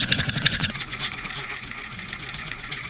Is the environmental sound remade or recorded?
remade